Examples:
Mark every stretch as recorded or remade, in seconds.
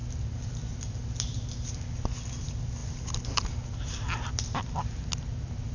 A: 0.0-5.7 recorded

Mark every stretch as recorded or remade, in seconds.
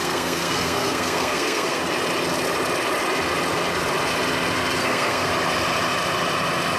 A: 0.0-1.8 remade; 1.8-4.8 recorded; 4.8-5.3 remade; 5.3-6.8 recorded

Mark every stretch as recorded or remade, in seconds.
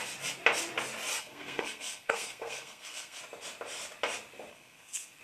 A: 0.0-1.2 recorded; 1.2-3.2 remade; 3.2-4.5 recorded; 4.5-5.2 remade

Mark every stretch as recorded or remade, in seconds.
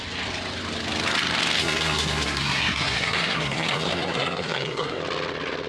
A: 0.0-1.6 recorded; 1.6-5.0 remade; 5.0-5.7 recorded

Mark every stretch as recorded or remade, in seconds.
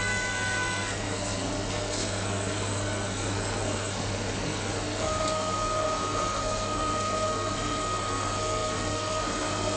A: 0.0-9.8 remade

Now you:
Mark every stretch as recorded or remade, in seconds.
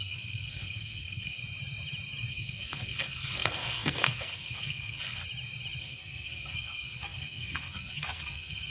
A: 0.0-1.4 remade; 1.4-2.3 recorded; 2.3-5.2 remade; 5.2-5.8 recorded; 5.8-8.7 remade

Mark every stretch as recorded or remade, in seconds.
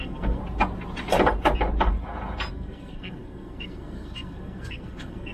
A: 0.0-0.4 remade; 0.4-2.5 recorded; 2.5-5.3 remade